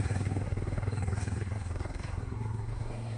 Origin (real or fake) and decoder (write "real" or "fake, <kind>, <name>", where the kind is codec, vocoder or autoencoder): fake, codec, SNAC